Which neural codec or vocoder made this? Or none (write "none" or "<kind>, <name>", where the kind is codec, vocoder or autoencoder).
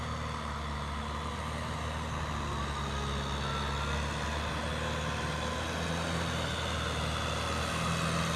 none